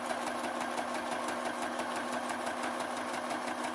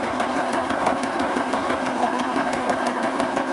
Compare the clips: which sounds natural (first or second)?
first